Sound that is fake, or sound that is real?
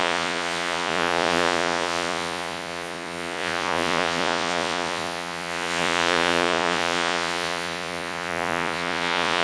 fake